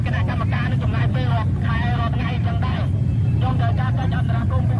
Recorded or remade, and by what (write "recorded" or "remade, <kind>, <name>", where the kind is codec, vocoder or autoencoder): recorded